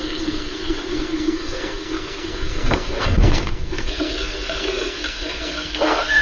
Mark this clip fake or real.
fake